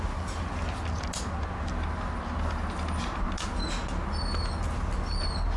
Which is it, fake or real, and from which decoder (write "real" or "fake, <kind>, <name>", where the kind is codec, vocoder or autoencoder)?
real